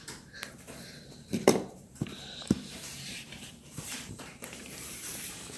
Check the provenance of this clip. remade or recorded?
remade